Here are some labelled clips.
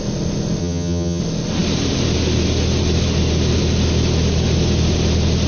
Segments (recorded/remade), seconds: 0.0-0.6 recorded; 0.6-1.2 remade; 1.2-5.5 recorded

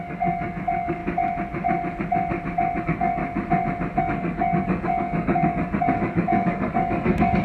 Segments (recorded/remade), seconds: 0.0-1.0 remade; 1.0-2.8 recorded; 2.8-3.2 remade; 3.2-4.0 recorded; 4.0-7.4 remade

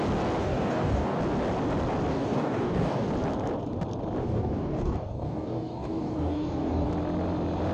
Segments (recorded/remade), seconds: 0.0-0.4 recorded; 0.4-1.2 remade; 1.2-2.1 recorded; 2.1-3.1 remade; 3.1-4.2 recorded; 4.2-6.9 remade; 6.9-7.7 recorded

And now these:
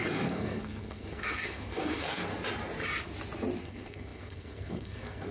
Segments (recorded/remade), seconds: 0.0-2.3 remade; 2.3-3.6 recorded; 3.6-5.3 remade

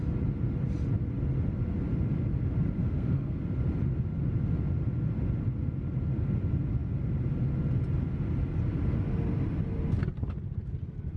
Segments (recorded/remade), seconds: 0.0-2.8 recorded; 2.8-3.4 remade; 3.4-11.2 recorded

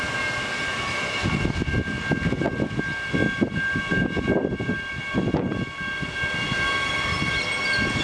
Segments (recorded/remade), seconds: 0.0-8.0 recorded

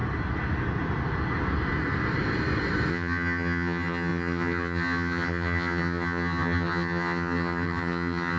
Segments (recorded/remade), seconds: 0.0-2.9 recorded; 2.9-8.4 remade